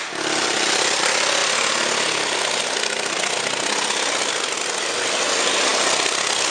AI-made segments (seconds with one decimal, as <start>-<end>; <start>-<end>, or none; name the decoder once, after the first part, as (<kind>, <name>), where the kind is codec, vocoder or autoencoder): none